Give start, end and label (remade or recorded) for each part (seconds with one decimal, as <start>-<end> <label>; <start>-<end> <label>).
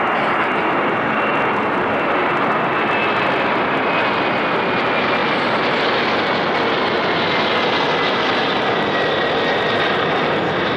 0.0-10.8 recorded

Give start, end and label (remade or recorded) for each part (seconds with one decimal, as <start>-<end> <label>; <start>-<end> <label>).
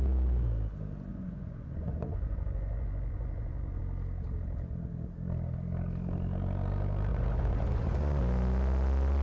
0.0-1.1 recorded; 1.1-3.8 remade; 3.8-7.1 recorded; 7.1-8.2 remade; 8.2-9.2 recorded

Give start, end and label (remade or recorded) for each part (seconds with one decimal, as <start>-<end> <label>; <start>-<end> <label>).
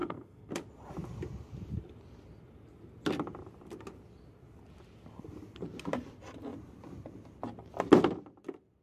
0.0-0.5 remade; 0.5-8.8 recorded